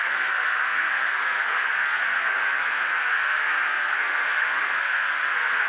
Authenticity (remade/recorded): remade